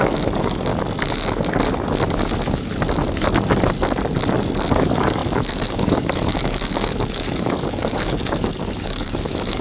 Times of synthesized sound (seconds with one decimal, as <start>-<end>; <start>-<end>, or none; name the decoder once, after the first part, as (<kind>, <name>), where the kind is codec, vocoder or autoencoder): 0.0-0.7 (codec, DAC); 4.7-9.6